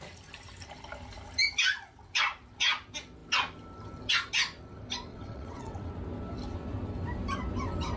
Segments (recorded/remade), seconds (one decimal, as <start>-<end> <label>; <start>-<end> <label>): 0.0-5.1 recorded; 5.1-5.9 remade; 5.9-8.0 recorded